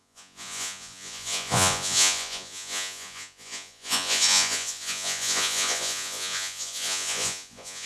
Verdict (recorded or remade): remade